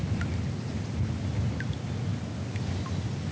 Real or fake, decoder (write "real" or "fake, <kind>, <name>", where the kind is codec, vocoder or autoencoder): real